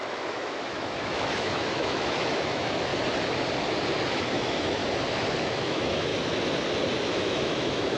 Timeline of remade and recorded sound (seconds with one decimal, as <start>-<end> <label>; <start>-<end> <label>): 0.0-2.9 remade; 2.9-4.1 recorded; 4.1-4.8 remade; 4.8-5.4 recorded; 5.4-6.1 remade; 6.1-7.0 recorded; 7.0-8.0 remade